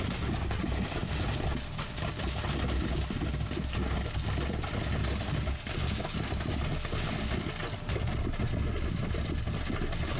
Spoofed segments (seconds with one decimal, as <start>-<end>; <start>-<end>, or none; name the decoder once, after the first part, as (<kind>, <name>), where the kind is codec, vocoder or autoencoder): none